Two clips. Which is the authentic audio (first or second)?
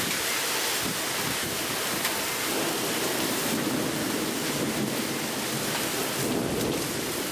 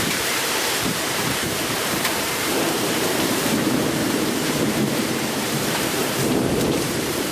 first